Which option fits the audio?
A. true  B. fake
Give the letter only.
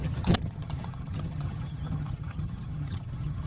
B